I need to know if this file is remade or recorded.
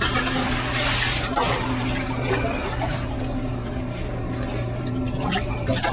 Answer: remade